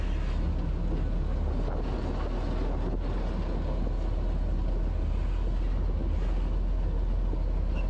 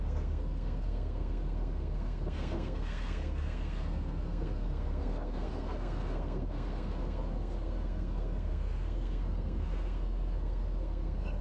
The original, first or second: first